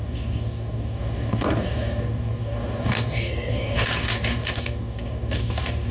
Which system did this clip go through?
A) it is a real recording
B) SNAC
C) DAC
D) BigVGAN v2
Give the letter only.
C